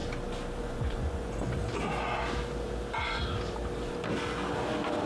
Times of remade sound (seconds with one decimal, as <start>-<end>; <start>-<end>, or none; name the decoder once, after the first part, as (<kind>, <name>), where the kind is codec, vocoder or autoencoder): 0.6-1.6 (vocoder, Vocos)